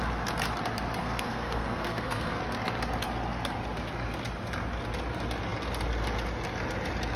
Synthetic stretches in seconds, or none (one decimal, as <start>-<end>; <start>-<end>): 1.0-2.4